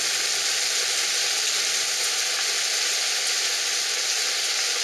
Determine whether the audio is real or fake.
real